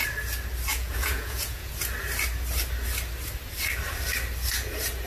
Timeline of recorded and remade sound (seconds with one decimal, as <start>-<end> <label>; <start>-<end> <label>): 0.0-0.7 recorded; 0.7-1.7 remade; 1.7-5.1 recorded